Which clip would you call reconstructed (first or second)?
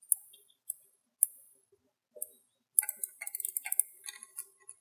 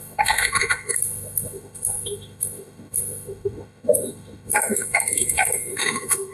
second